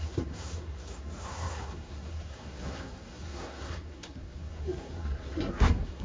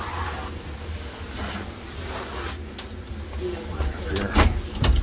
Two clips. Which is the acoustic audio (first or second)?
second